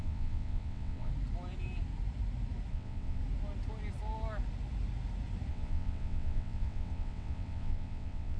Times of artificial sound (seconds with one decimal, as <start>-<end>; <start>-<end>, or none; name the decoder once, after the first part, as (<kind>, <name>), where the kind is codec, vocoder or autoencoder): 0.0-1.1 (vocoder, WaveNeXt); 2.7-3.2; 5.5-8.4